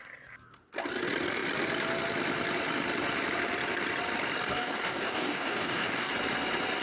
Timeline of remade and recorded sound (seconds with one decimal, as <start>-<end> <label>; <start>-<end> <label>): 0.0-4.5 recorded; 4.5-6.1 remade; 6.1-6.8 recorded